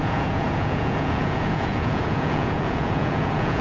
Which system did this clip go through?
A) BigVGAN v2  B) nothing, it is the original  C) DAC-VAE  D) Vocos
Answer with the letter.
D